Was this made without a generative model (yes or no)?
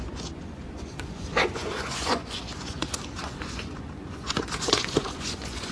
no